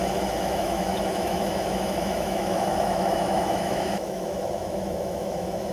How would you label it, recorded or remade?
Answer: remade